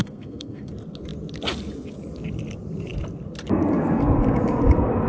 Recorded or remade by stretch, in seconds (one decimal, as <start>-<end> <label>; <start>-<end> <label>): 0.0-0.7 remade; 0.7-5.1 recorded